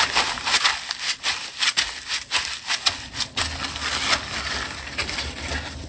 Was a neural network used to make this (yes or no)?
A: no